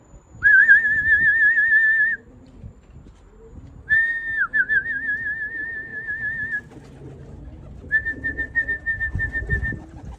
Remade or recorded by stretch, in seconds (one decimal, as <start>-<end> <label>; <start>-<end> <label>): 0.0-10.2 recorded